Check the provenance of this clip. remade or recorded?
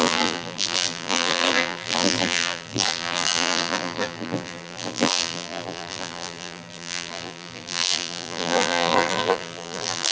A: remade